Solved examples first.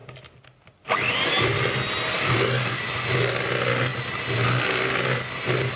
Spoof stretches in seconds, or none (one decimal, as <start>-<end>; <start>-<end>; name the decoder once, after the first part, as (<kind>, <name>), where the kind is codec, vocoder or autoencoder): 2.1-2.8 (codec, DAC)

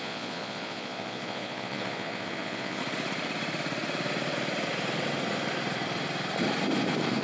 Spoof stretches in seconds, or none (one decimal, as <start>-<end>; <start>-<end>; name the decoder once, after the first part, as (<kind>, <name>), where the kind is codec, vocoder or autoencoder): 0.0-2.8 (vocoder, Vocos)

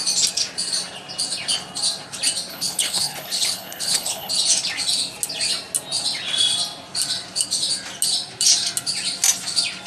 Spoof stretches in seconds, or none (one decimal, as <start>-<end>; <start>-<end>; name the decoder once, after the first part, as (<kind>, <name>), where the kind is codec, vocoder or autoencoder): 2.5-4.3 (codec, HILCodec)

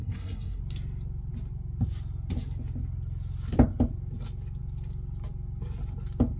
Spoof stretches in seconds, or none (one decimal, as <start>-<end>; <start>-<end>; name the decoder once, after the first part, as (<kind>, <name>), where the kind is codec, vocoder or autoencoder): 0.0-0.6 (codec, SNAC)

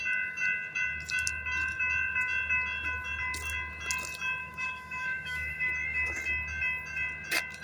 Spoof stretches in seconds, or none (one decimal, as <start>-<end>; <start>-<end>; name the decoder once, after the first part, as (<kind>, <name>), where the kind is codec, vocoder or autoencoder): 4.4-6.2 (autoencoder, DAC-VAE)

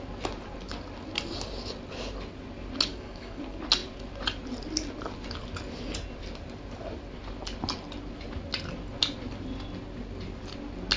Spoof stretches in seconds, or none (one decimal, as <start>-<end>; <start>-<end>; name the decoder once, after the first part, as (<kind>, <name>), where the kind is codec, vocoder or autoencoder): 2.9-3.4 (codec, DAC)

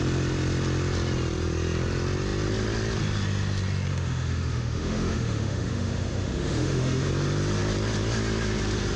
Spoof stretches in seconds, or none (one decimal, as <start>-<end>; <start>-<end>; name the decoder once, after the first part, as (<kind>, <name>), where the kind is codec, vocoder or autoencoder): 3.9-7.1 (autoencoder, DAC-VAE)

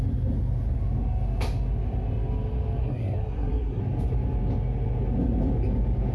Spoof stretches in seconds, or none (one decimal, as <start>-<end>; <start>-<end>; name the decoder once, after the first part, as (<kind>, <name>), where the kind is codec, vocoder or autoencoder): 2.8-3.8 (codec, SNAC)